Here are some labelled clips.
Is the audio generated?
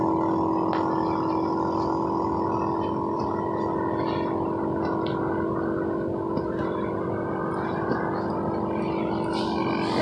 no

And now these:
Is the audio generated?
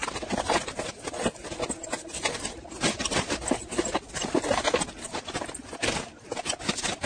no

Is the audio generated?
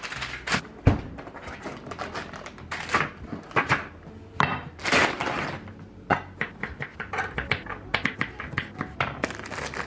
no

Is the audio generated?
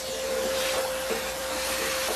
yes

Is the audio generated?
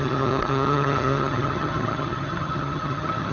yes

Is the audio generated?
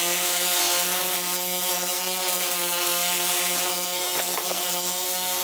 yes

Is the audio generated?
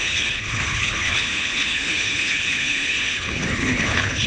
yes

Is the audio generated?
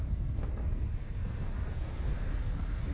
yes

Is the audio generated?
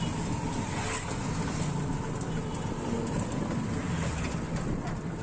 no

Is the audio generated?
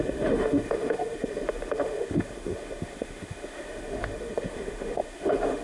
yes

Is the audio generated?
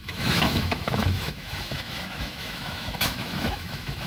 yes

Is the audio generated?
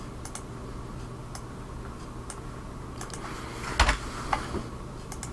no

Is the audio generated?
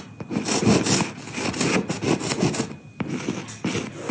no